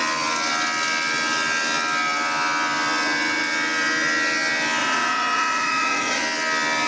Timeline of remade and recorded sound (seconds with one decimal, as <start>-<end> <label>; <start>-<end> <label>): 0.0-4.8 recorded; 4.8-6.2 remade; 6.2-6.9 recorded